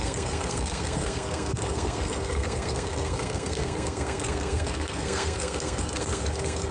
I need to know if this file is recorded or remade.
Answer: remade